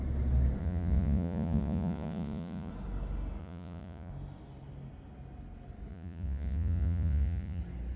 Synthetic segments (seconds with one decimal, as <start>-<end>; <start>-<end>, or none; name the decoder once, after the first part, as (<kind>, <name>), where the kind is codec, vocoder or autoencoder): 0.6-2.7 (vocoder, Vocos); 3.4-4.1; 5.9-7.6